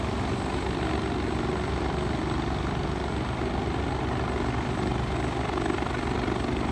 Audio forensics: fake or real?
real